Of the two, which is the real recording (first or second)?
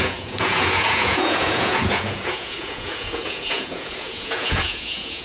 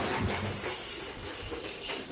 second